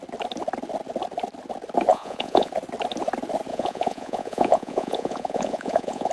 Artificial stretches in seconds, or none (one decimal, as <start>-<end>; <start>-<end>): 1.9-2.5; 3.5-6.1